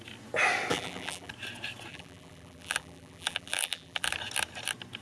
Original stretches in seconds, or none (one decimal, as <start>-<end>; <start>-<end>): 0.0-0.7; 1.3-1.9; 4.1-5.0